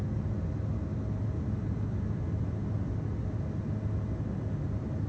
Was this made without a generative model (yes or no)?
yes